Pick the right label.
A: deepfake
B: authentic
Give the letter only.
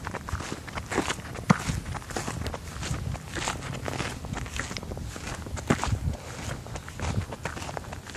B